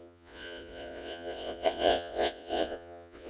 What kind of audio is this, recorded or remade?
remade